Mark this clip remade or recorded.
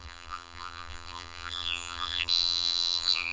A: remade